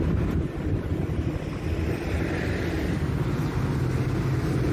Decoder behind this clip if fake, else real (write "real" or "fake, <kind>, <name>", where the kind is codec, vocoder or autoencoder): real